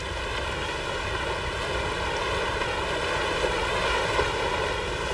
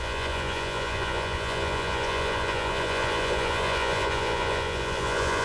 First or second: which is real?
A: first